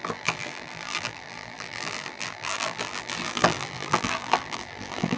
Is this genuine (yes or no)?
no